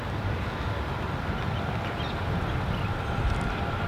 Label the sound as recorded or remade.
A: recorded